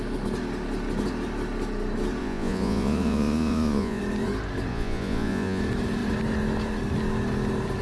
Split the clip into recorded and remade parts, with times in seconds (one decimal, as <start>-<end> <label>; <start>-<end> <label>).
0.0-2.2 recorded; 2.2-4.0 remade; 4.0-4.7 recorded; 4.7-5.6 remade; 5.6-7.8 recorded